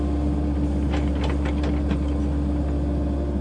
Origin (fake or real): real